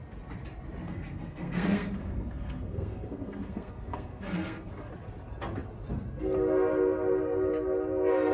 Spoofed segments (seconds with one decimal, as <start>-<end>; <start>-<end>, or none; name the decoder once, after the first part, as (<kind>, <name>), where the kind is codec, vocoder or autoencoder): 0.9-4.9 (codec, SNAC)